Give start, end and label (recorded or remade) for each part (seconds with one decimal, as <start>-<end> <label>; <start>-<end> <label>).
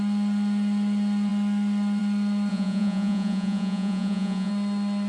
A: 0.0-2.5 recorded; 2.5-4.5 remade; 4.5-5.1 recorded